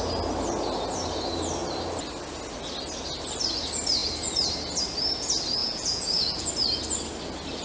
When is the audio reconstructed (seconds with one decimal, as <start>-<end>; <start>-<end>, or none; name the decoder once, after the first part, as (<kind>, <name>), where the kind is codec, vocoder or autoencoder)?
5.6-6.5 (vocoder, Vocos)